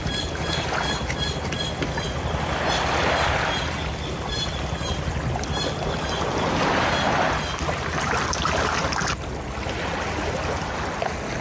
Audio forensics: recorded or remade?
recorded